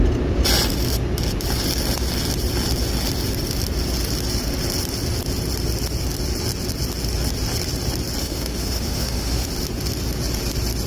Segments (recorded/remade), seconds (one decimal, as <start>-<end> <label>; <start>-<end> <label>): 0.0-8.2 recorded; 8.2-9.5 remade; 9.5-10.9 recorded